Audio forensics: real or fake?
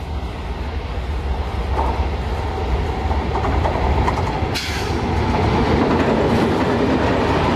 real